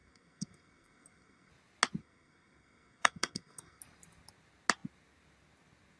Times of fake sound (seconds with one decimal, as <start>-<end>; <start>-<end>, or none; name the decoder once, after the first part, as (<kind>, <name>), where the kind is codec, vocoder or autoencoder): 0.0-1.5 (codec, SNAC); 2.0-3.8